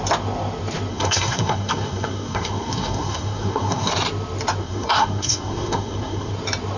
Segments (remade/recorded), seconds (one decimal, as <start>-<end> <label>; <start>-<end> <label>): 0.0-0.9 recorded; 0.9-3.9 remade; 3.9-4.6 recorded; 4.6-6.3 remade; 6.3-6.8 recorded